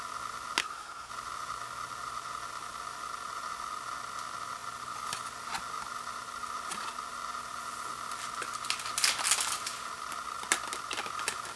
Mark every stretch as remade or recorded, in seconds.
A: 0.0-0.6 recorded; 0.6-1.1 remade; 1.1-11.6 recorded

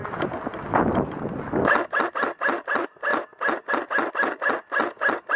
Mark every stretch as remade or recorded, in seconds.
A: 0.0-5.4 recorded

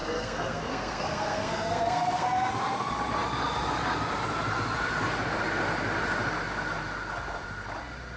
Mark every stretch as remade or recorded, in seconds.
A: 0.0-2.5 remade; 2.5-8.2 recorded

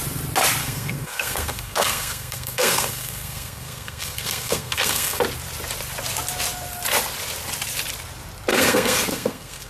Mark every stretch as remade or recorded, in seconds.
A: 0.0-0.6 recorded; 0.6-5.2 remade; 5.2-8.5 recorded; 8.5-9.7 remade

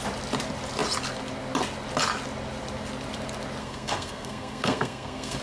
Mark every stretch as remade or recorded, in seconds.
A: 0.0-3.6 recorded; 3.6-5.4 remade

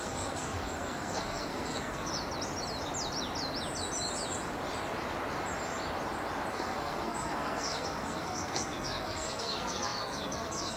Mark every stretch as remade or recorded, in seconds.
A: 0.0-2.1 remade; 2.1-6.5 recorded; 6.5-10.8 remade